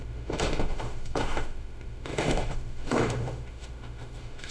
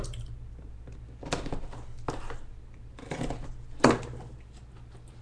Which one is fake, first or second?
first